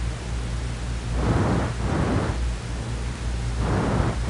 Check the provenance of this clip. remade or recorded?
recorded